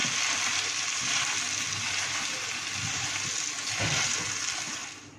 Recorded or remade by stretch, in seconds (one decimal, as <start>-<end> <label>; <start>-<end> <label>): 0.0-5.2 recorded